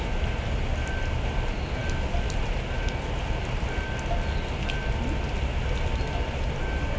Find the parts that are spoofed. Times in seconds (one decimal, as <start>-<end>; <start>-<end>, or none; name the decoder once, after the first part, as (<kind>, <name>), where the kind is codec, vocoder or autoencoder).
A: none